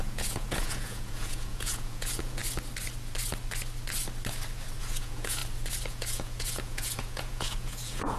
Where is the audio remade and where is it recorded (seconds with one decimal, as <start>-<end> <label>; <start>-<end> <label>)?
0.0-2.4 remade; 2.4-4.8 recorded; 4.8-5.4 remade; 5.4-5.9 recorded; 5.9-8.2 remade